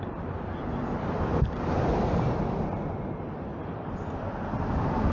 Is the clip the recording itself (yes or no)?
yes